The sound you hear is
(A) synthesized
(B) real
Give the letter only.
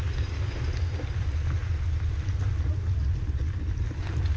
B